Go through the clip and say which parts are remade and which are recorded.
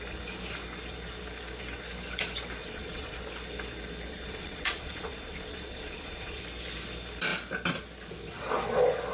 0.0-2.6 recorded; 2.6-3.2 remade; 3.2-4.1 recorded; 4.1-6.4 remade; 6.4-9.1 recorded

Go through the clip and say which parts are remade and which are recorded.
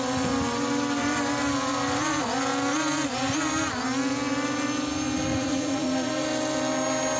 0.0-5.3 recorded; 5.3-6.1 remade; 6.1-7.2 recorded